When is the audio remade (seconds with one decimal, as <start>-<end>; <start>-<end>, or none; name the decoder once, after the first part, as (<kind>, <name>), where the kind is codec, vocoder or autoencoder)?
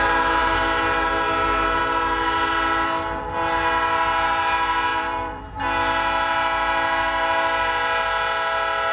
4.9-5.5 (vocoder, BigVGAN v2)